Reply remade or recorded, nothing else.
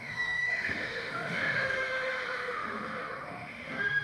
remade